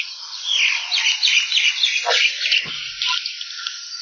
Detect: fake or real real